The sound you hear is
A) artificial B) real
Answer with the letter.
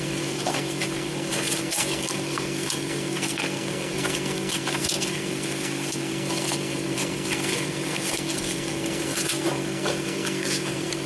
A